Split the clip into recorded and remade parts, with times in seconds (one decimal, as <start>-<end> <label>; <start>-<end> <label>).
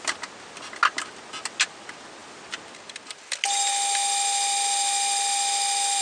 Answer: 0.0-6.0 recorded